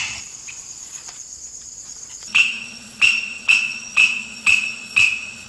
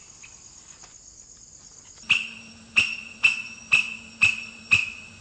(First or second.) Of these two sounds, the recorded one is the second